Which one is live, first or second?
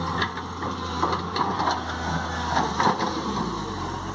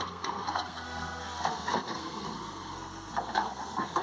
first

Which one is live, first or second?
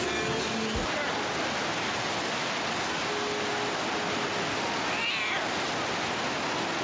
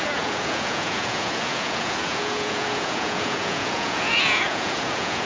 first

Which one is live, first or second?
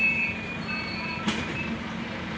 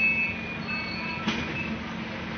second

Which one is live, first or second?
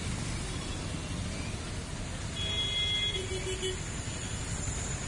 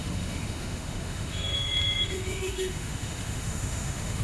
first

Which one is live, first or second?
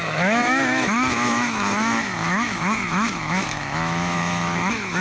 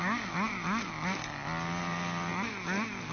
second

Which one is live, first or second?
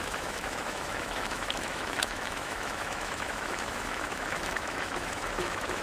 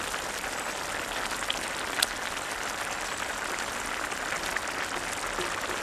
second